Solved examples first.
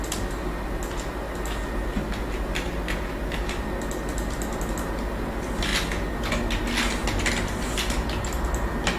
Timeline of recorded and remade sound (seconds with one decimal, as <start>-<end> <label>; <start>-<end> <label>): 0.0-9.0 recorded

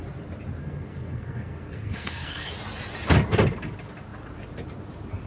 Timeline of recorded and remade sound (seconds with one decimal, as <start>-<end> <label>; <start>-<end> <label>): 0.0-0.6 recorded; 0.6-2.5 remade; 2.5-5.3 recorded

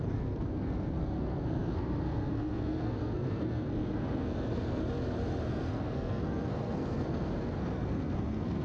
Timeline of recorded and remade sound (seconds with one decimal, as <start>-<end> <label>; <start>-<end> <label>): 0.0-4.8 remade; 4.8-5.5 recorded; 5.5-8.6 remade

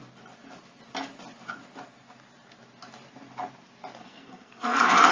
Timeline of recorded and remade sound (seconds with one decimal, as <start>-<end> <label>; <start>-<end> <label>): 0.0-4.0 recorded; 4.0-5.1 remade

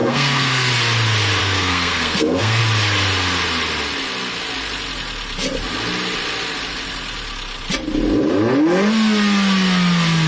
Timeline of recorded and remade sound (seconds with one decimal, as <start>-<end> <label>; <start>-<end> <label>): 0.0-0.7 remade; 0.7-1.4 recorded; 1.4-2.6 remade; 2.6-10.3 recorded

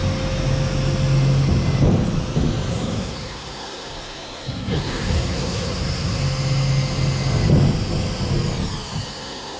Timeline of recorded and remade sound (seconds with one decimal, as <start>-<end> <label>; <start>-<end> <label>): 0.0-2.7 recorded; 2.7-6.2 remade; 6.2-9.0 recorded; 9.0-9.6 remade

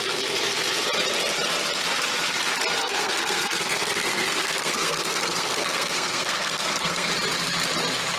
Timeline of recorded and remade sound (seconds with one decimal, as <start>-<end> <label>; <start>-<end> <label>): 0.0-2.8 recorded; 2.8-7.1 remade; 7.1-8.2 recorded

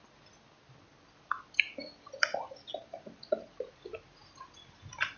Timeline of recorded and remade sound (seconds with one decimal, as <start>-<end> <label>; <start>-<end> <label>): 0.0-5.2 recorded